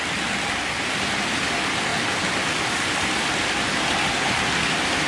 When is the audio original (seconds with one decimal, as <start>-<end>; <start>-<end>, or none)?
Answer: 0.0-5.1